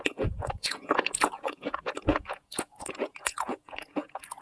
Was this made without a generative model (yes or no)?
no